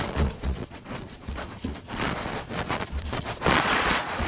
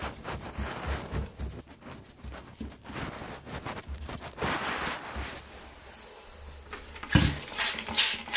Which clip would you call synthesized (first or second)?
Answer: first